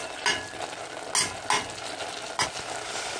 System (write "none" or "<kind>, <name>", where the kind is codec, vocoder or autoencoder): none